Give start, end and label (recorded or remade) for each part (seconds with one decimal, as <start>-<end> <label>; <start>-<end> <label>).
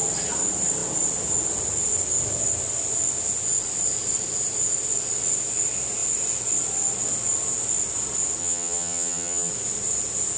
0.0-8.4 recorded; 8.4-9.5 remade; 9.5-10.4 recorded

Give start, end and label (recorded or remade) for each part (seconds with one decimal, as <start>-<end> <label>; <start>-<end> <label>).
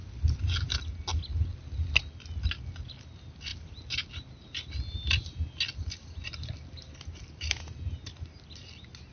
0.0-9.1 recorded